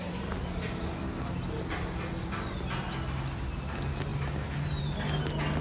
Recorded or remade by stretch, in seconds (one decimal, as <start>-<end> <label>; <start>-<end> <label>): 0.0-5.6 recorded